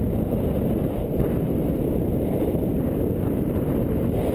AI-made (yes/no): no